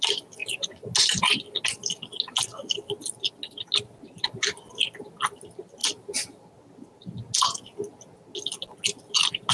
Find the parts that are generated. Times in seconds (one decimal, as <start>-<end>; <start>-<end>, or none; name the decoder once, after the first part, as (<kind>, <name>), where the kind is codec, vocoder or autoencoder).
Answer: none